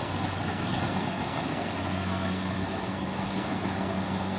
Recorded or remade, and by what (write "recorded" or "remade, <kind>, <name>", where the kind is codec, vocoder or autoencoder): remade, codec, SNAC